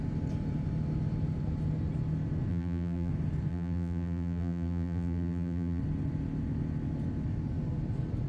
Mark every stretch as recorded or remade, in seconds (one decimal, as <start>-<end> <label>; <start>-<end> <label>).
0.0-2.5 recorded; 2.5-3.1 remade; 3.1-3.5 recorded; 3.5-5.8 remade; 5.8-8.3 recorded